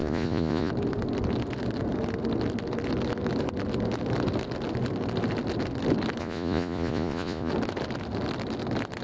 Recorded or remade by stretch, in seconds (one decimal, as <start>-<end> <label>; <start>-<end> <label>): 0.0-0.7 remade; 0.7-6.2 recorded; 6.2-7.5 remade; 7.5-9.0 recorded